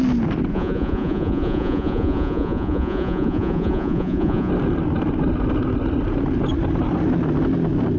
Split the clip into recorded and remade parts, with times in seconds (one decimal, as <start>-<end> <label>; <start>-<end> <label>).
0.0-0.5 recorded; 0.5-4.5 remade; 4.5-8.0 recorded